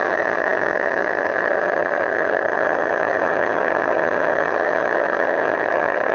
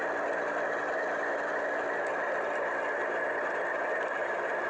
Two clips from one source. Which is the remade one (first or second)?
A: first